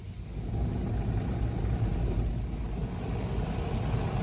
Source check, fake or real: real